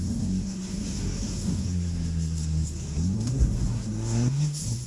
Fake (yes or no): yes